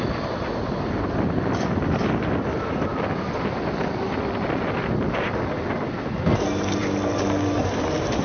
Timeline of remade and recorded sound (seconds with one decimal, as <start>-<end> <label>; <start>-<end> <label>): 0.0-8.2 recorded